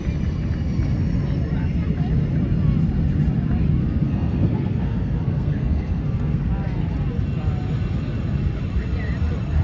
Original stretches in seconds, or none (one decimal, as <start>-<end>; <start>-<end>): 0.0-3.8; 6.5-9.6